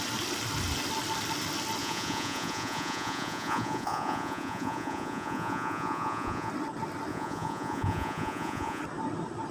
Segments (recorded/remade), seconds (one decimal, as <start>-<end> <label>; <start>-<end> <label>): 0.0-1.8 recorded; 1.8-6.5 remade; 6.5-7.1 recorded; 7.1-8.8 remade; 8.8-9.5 recorded